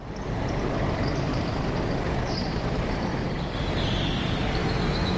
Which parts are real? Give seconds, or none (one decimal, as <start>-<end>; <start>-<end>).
0.0-4.6

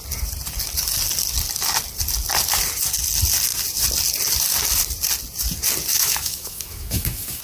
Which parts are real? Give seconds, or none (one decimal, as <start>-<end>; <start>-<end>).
0.0-5.9

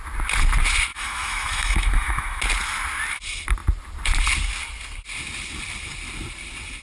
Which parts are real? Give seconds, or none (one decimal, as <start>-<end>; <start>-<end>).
0.0-0.9; 2.4-6.8

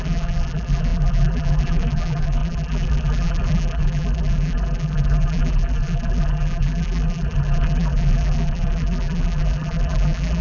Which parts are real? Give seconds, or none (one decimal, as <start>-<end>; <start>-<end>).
none

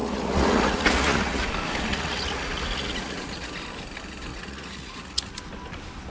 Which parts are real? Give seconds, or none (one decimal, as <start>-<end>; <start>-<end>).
1.5-1.9; 3.5-4.3; 5.3-6.1

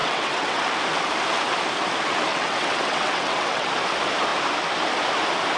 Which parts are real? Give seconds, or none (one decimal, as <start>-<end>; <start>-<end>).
0.6-2.3; 3.7-5.6

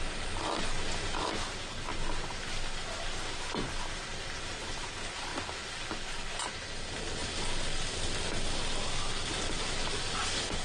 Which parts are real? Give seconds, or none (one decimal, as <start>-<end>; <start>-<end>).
0.0-10.6

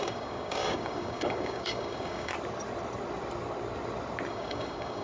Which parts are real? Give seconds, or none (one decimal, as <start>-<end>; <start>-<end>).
2.3-4.3